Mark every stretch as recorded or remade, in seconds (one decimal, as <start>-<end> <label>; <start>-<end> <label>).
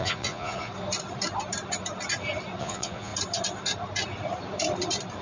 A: 0.0-0.7 remade; 0.7-2.6 recorded; 2.6-3.1 remade; 3.1-5.2 recorded